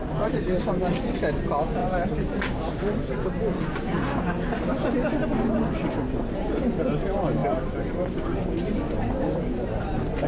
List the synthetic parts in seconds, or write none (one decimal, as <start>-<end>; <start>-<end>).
none